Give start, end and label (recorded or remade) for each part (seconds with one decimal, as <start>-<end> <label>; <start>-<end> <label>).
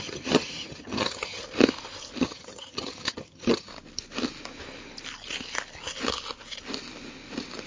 0.0-1.4 remade; 1.4-2.2 recorded; 2.2-3.7 remade; 3.7-7.7 recorded